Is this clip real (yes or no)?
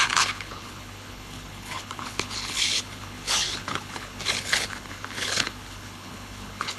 no